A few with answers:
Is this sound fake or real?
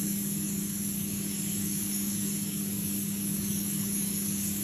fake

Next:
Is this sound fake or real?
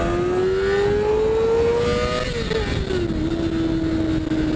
real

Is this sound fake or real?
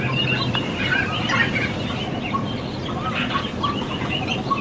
real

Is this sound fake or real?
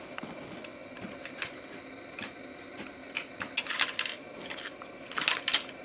real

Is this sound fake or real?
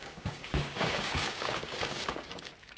fake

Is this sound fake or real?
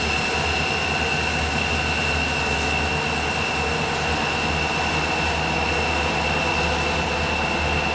real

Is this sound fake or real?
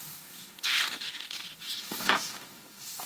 fake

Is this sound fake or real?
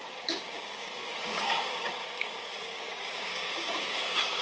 fake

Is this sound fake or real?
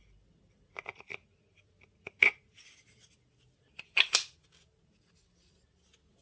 real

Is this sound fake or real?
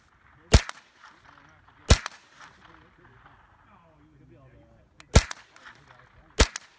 real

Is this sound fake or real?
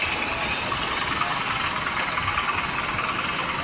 real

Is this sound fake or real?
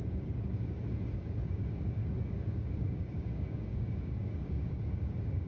fake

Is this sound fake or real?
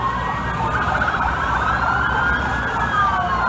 real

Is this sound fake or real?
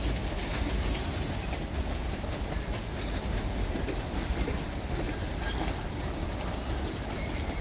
real